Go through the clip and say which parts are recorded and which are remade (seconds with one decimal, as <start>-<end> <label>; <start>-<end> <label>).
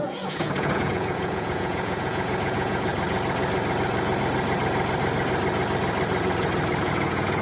0.0-2.9 remade; 2.9-6.8 recorded; 6.8-7.4 remade